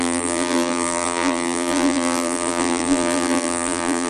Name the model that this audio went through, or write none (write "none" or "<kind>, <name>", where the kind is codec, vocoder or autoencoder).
vocoder, BigVGAN v2